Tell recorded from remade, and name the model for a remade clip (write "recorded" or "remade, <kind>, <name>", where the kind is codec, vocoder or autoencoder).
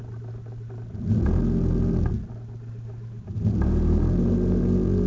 recorded